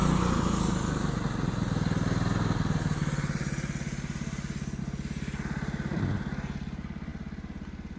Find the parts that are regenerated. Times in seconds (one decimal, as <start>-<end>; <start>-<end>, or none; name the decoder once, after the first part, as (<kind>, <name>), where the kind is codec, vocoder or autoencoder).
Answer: none